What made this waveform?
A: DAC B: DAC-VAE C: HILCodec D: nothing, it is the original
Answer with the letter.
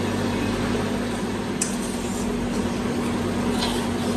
D